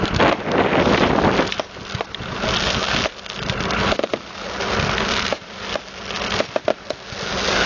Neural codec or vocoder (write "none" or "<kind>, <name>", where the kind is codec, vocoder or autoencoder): none